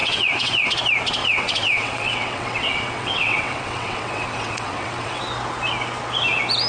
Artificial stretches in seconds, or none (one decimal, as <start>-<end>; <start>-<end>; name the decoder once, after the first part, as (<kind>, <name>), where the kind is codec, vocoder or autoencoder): 0.0-0.7 (vocoder, WaveNeXt); 1.2-5.2